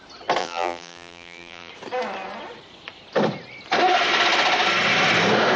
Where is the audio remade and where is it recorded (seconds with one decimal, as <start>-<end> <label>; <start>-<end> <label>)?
0.0-0.4 recorded; 0.4-1.7 remade; 1.7-5.6 recorded